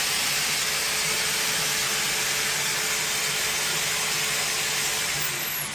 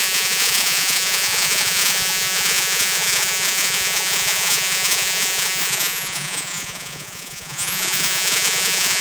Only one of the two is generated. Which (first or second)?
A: second